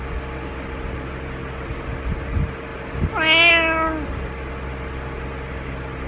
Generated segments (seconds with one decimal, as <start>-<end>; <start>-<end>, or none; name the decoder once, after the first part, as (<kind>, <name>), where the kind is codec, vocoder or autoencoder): none